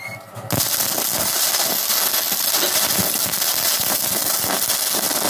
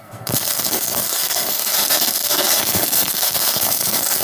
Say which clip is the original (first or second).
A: first